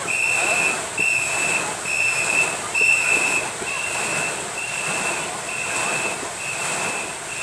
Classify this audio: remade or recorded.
remade